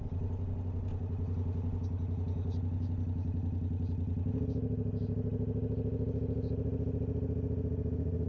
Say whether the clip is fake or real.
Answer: real